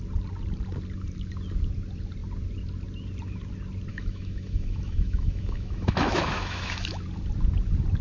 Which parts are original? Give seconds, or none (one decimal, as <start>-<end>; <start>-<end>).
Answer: 0.0-3.9; 7.0-8.0